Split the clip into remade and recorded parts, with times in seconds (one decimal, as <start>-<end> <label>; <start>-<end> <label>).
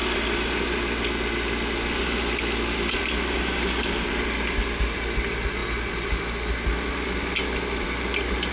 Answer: 0.0-8.5 recorded